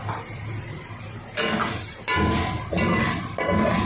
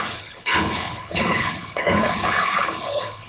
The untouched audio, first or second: first